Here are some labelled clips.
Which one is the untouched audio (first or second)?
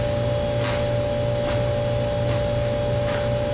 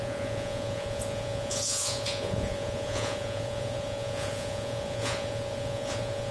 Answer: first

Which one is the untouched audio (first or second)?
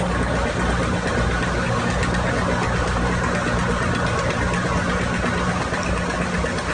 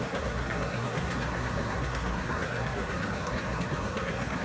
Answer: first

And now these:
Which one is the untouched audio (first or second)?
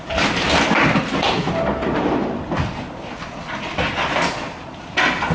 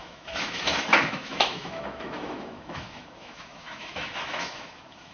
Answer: first